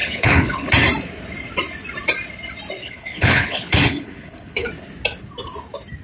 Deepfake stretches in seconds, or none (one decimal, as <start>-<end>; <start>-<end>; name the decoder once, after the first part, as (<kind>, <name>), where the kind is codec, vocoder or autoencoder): 0.0-0.7 (codec, HILCodec); 2.8-4.7